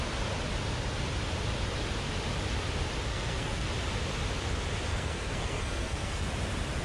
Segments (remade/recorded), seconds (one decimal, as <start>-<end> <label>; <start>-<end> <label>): 0.0-3.1 recorded; 3.1-3.7 remade; 3.7-4.9 recorded; 4.9-6.3 remade; 6.3-6.8 recorded